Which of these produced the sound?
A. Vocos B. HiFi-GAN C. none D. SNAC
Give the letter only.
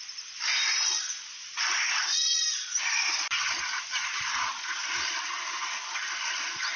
C